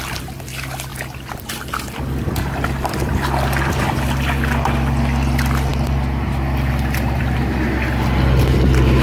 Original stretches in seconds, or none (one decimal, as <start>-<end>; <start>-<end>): 5.7-7.2